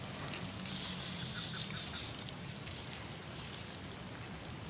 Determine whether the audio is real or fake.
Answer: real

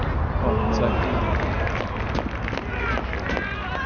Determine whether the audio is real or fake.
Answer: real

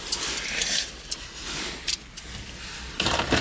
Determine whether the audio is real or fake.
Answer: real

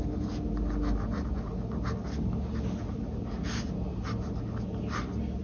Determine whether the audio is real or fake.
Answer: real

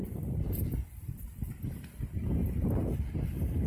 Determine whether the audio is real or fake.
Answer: real